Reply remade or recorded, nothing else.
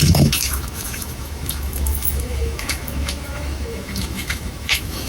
remade